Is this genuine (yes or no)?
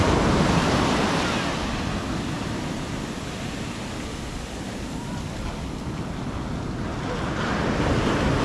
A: yes